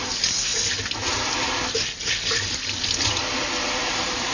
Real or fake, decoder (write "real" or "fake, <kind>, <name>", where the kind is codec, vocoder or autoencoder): fake, vocoder, BigVGAN v2